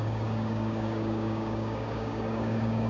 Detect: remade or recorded remade